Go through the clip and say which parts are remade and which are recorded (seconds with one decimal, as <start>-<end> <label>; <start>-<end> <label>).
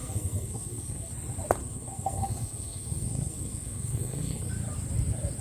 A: 0.0-1.1 remade; 1.1-1.6 recorded; 1.6-4.5 remade; 4.5-5.4 recorded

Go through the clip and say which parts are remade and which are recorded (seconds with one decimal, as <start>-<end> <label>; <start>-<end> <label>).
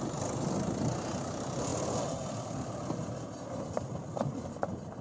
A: 0.0-5.0 recorded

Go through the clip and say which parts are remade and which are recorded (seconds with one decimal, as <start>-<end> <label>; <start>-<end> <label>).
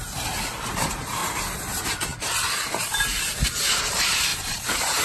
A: 0.0-0.7 recorded; 0.7-1.2 remade; 1.2-1.7 recorded; 1.7-2.1 remade; 2.1-2.9 recorded; 2.9-5.0 remade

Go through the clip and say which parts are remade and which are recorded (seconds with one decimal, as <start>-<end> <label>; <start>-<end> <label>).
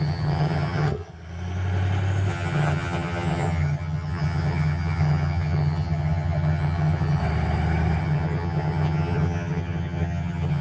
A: 0.0-1.1 remade; 1.1-2.3 recorded; 2.3-7.2 remade; 7.2-8.0 recorded; 8.0-10.6 remade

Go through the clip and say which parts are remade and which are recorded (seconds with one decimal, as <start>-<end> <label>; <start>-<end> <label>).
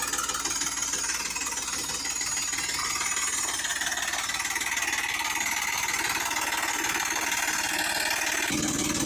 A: 0.0-9.1 recorded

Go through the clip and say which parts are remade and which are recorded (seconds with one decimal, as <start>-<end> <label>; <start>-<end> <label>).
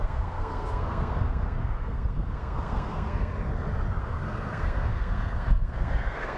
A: 0.0-3.3 remade; 3.3-4.0 recorded; 4.0-6.4 remade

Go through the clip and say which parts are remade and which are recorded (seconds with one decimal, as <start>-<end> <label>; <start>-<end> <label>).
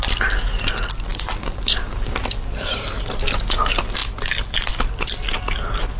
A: 0.0-1.1 recorded; 1.1-2.2 remade; 2.2-6.0 recorded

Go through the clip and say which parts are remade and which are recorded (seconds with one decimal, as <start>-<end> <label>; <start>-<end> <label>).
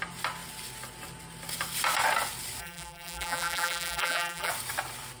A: 0.0-2.6 recorded; 2.6-4.5 remade; 4.5-5.2 recorded